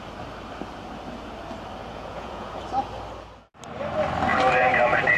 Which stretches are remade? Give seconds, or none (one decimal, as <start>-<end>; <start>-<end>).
1.8-2.6